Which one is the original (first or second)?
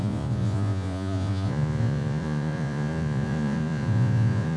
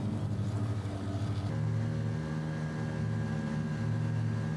second